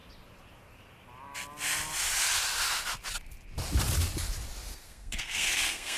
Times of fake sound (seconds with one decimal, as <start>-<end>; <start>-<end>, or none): 4.6-6.0